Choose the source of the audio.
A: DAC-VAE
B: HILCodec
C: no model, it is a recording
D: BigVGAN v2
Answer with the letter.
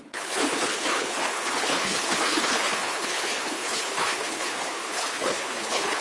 B